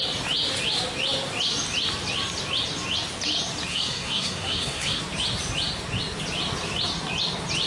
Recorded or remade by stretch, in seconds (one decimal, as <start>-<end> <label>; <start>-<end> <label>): 0.0-3.7 recorded; 3.7-5.0 remade; 5.0-7.7 recorded